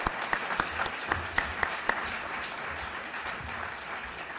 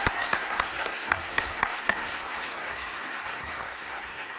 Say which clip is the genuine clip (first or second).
first